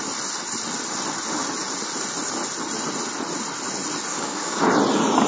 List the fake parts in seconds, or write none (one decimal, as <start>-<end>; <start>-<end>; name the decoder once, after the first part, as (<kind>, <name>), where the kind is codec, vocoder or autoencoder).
4.1-4.6 (codec, DAC)